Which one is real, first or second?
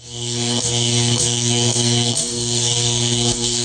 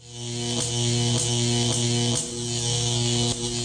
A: second